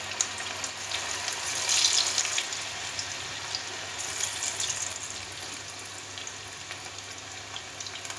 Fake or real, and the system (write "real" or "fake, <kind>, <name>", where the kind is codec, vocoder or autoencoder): real